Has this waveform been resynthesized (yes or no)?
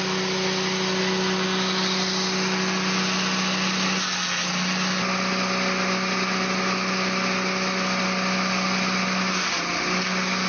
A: no